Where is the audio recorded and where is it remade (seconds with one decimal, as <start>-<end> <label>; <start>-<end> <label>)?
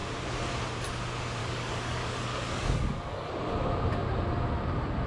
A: 0.0-1.4 recorded; 1.4-3.3 remade; 3.3-5.1 recorded